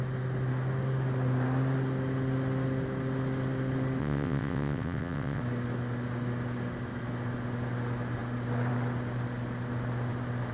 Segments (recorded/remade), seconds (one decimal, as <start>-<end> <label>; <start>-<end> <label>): 0.0-4.0 recorded; 4.0-5.4 remade; 5.4-10.5 recorded